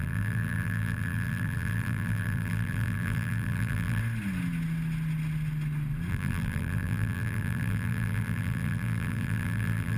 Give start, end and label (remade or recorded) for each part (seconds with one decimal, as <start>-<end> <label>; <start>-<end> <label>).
0.0-4.0 remade; 4.0-6.1 recorded; 6.1-10.0 remade